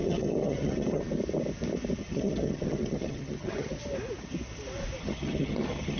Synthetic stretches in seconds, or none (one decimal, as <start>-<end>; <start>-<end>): 0.0-1.0; 2.0-3.8; 5.0-6.0